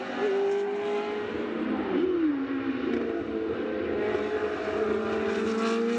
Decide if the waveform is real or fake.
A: real